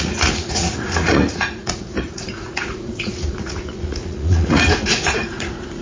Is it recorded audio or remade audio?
remade